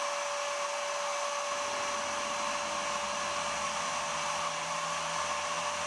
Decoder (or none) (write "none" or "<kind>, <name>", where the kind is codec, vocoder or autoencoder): none